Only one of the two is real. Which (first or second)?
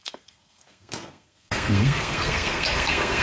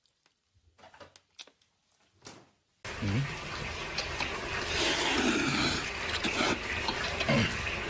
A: second